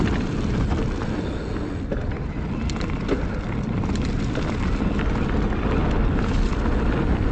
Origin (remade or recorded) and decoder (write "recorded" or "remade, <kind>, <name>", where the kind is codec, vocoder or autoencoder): recorded